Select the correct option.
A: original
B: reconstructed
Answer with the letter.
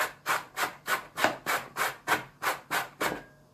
A